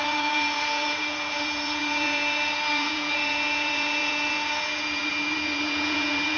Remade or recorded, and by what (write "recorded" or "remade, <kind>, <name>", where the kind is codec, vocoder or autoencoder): remade, vocoder, Vocos